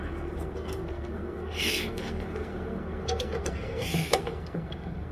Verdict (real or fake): fake